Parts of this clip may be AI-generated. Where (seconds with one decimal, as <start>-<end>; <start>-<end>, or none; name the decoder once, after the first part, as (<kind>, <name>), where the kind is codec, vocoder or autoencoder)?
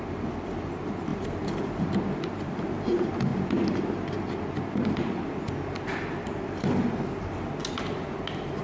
1.1-1.6 (vocoder, BigVGAN v2)